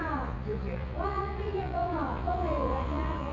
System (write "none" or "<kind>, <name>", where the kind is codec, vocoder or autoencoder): vocoder, Vocos